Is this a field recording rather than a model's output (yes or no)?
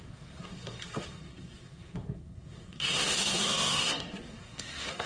no